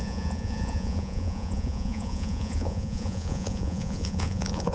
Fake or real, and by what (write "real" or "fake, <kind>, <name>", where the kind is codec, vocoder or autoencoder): fake, vocoder, Vocos